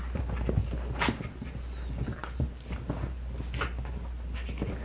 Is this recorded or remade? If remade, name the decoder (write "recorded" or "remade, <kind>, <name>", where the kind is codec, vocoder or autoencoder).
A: recorded